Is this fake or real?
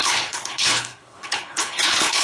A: fake